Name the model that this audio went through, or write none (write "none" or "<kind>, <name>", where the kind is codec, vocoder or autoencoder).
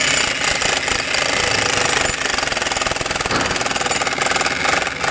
none